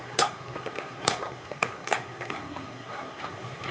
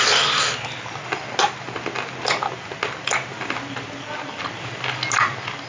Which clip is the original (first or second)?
second